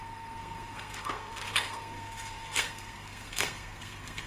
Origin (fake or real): fake